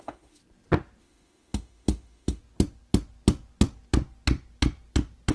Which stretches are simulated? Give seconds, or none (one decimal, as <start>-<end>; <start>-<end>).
0.0-0.4; 1.0-2.4